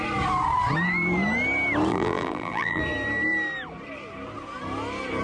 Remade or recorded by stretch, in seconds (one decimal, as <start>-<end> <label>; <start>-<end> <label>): 0.0-1.9 recorded; 1.9-2.8 remade; 2.8-5.2 recorded